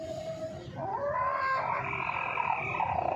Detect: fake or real real